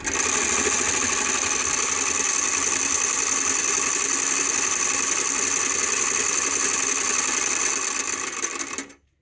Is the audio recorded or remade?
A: recorded